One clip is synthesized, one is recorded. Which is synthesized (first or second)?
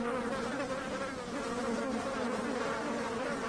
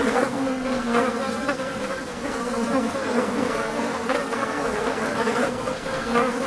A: second